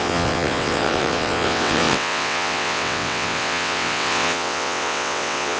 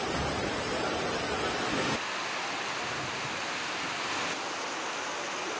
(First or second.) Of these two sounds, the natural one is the second